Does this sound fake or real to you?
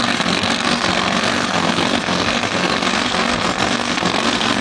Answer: fake